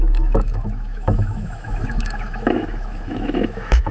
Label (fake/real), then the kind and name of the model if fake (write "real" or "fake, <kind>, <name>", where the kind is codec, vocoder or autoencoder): fake, autoencoder, DAC-VAE